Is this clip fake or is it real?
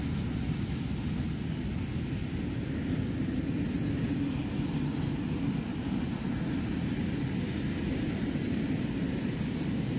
real